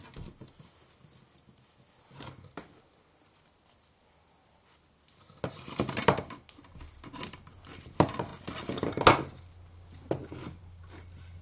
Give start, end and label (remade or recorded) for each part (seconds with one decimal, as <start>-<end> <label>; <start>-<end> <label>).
0.0-11.4 recorded

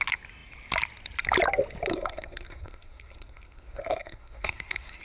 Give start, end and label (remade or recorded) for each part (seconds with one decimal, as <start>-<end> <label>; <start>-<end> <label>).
0.0-1.9 recorded; 1.9-5.0 remade

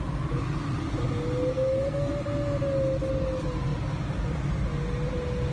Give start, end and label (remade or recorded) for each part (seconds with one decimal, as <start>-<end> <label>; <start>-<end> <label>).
0.0-1.5 recorded; 1.5-2.1 remade; 2.1-5.5 recorded

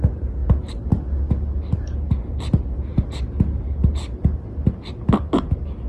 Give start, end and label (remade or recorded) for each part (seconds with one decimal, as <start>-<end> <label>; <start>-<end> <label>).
0.0-5.9 recorded

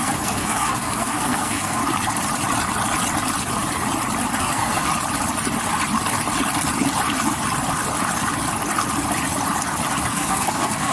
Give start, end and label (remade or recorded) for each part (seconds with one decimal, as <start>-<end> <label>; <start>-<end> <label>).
0.0-1.8 remade; 1.8-4.4 recorded; 4.4-4.9 remade; 4.9-10.1 recorded; 10.1-10.9 remade

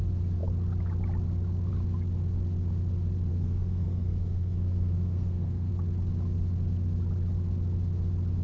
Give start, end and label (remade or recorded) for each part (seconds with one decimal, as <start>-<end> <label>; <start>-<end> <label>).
0.0-3.3 recorded; 3.3-5.7 remade; 5.7-8.4 recorded

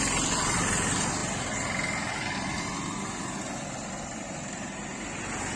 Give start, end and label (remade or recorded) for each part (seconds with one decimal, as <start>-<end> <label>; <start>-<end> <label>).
0.0-5.6 recorded